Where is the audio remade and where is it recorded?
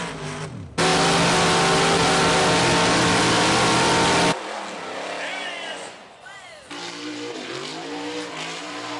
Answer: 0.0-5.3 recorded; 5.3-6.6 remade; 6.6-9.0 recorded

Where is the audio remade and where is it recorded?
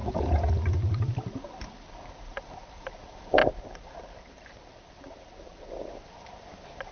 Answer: 0.0-0.5 remade; 0.5-6.9 recorded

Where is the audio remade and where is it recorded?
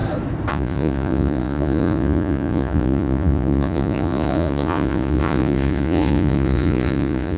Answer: 0.0-0.5 recorded; 0.5-7.4 remade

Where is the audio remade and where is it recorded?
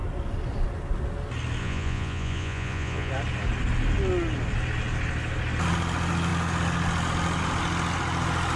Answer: 0.0-1.6 recorded; 1.6-3.1 remade; 3.1-8.6 recorded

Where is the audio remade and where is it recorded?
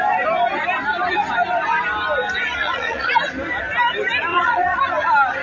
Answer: 0.0-2.6 recorded; 2.6-3.1 remade; 3.1-4.3 recorded; 4.3-4.8 remade; 4.8-5.4 recorded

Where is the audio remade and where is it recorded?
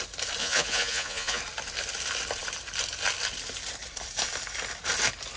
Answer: 0.0-0.4 recorded; 0.4-1.4 remade; 1.4-5.4 recorded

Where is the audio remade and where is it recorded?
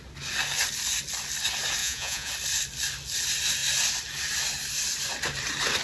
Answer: 0.0-1.8 recorded; 1.8-2.3 remade; 2.3-5.8 recorded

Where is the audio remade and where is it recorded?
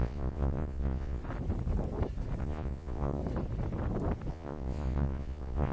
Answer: 0.0-1.2 remade; 1.2-2.4 recorded; 2.4-3.2 remade; 3.2-4.3 recorded; 4.3-5.7 remade